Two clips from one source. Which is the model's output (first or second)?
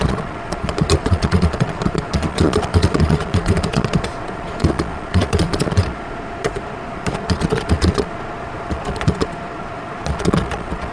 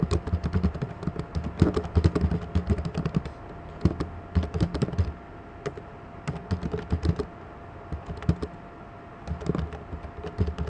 first